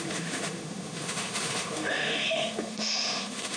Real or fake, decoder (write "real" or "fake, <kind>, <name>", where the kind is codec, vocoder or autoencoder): fake, autoencoder, DAC-VAE